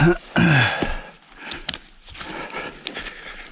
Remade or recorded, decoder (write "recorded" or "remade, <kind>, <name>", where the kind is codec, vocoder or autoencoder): recorded